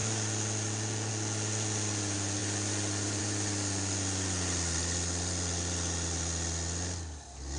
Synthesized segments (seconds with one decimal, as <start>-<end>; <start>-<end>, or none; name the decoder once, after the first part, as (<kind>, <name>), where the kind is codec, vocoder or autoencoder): none